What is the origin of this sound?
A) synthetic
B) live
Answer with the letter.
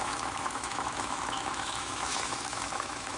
A